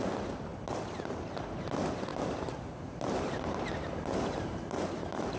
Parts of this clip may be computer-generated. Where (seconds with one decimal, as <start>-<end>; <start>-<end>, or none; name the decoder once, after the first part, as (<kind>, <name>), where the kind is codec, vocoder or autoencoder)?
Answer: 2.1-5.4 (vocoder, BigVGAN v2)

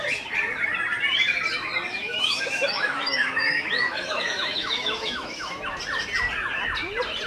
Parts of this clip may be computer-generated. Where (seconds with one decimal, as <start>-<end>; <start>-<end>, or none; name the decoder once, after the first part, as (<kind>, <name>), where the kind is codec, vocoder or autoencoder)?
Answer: 1.9-5.6 (autoencoder, DAC-VAE)

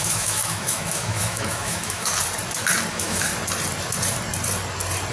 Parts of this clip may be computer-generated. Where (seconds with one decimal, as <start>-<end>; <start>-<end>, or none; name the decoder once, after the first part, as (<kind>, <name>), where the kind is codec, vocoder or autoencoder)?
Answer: 0.0-2.1 (autoencoder, DAC-VAE); 2.9-3.3

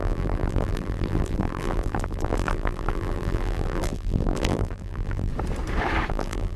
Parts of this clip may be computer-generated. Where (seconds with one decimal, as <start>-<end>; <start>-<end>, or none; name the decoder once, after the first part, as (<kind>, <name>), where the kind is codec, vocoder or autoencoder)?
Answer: 0.0-5.3 (vocoder, BigVGAN v2); 6.1-6.6

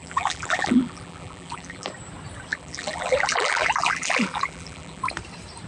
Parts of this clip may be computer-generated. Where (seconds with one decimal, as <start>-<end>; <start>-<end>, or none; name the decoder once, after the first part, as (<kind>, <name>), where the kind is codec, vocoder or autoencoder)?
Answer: 0.0-1.9 (vocoder, BigVGAN v2); 2.5-5.0